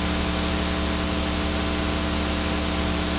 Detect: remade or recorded recorded